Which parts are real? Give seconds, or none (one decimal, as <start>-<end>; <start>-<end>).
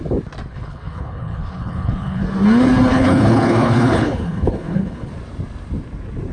0.0-0.5; 2.2-2.9; 5.1-6.3